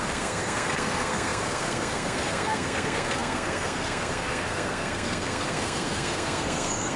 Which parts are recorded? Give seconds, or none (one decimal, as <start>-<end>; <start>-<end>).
none